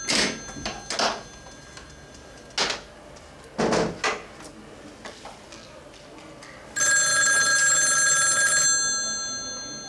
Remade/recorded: recorded